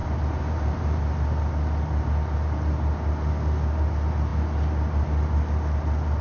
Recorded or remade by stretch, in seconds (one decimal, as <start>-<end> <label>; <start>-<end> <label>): 0.0-1.0 remade; 1.0-6.2 recorded